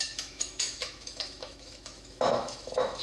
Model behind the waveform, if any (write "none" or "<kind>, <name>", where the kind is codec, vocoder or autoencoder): autoencoder, DAC-VAE